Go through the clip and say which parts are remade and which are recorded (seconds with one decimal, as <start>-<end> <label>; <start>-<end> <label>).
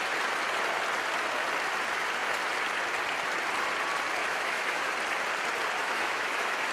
0.0-4.2 recorded; 4.2-4.9 remade; 4.9-5.8 recorded; 5.8-6.7 remade